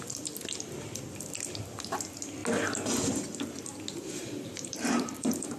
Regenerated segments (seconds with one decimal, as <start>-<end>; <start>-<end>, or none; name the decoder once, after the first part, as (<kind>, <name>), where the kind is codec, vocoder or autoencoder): 4.2-5.6 (vocoder, BigVGAN v2)